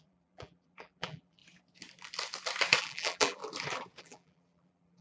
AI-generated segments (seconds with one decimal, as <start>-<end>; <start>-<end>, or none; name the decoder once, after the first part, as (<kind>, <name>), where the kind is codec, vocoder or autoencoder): 0.0-1.4 (vocoder, BigVGAN v2); 2.8-3.4; 4.0-5.0